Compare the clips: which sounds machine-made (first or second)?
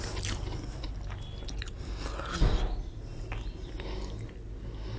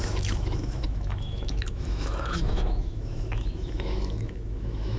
second